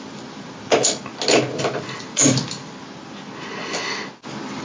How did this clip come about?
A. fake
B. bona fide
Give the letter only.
B